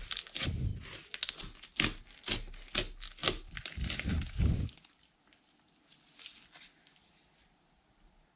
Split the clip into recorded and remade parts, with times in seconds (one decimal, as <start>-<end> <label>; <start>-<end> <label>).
0.0-8.4 recorded